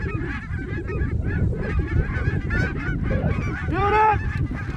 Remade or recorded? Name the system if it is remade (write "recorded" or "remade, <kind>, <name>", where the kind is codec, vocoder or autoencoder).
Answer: remade, vocoder, BigVGAN v2